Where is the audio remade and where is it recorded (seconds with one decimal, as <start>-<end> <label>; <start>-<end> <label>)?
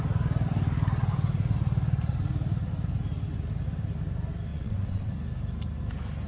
0.0-4.5 recorded; 4.5-5.1 remade; 5.1-6.3 recorded